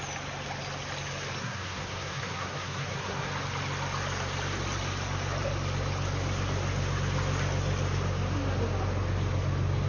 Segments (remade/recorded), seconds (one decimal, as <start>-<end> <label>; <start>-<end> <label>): 0.0-1.4 recorded; 1.4-3.3 remade; 3.3-9.9 recorded